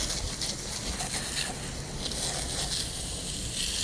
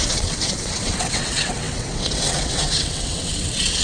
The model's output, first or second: second